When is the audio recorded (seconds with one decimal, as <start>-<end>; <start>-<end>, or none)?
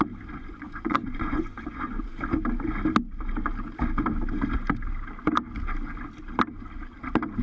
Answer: 0.0-0.4; 2.2-7.4